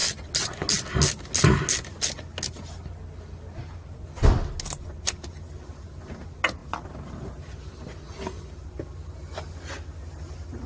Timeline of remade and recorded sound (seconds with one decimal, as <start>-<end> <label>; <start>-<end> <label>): 0.0-10.7 recorded